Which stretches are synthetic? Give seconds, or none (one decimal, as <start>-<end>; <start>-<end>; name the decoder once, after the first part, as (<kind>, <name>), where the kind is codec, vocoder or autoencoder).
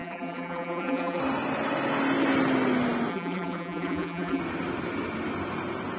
0.0-1.2 (vocoder, BigVGAN v2); 3.1-4.4